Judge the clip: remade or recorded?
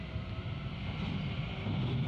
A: recorded